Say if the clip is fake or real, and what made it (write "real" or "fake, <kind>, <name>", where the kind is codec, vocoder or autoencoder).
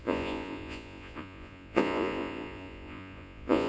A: fake, vocoder, Vocos